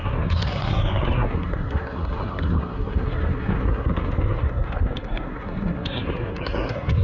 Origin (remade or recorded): remade